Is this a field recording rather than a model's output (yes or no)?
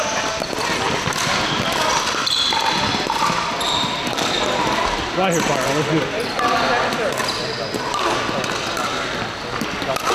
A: yes